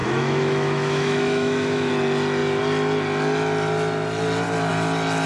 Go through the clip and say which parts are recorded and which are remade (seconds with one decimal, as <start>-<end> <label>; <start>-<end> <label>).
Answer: 0.0-1.9 remade; 1.9-5.3 recorded